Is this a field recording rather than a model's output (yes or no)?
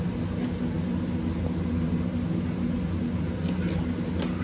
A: yes